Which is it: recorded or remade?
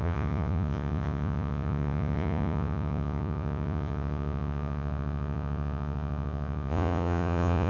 remade